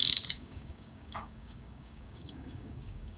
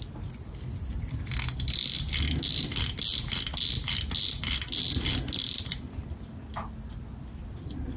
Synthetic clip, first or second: first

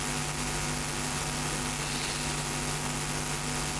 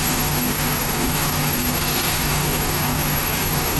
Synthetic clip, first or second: second